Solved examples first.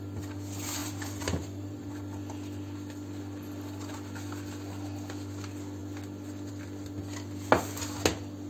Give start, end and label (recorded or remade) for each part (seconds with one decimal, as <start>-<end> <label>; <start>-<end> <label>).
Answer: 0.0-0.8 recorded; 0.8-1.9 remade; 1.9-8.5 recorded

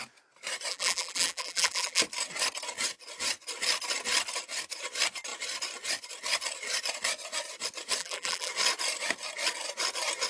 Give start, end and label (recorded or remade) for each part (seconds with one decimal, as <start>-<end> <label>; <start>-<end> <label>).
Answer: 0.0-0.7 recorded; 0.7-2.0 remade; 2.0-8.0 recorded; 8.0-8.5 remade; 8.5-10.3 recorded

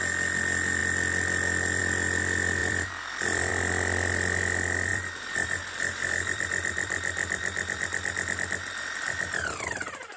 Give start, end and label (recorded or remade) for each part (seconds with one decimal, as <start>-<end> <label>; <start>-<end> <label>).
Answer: 0.0-2.6 recorded; 2.6-3.5 remade; 3.5-4.9 recorded; 4.9-9.2 remade; 9.2-10.2 recorded

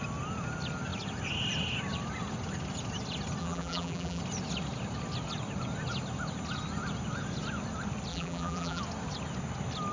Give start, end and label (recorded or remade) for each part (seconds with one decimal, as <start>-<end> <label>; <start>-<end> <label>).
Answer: 0.0-3.4 recorded; 3.4-4.2 remade; 4.2-8.1 recorded; 8.1-8.8 remade; 8.8-9.9 recorded

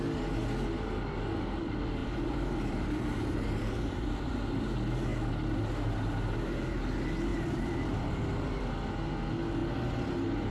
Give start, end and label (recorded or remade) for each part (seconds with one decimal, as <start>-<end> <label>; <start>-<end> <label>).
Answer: 0.0-2.0 recorded; 2.0-4.5 remade; 4.5-7.3 recorded; 7.3-8.7 remade; 8.7-10.5 recorded